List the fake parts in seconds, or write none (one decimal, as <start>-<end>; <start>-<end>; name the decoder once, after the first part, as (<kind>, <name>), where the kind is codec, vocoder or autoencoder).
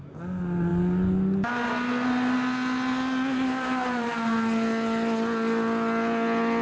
none